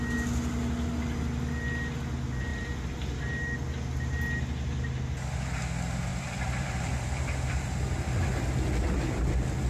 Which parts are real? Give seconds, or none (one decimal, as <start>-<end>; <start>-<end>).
0.0-2.5; 3.2-6.1; 8.4-9.7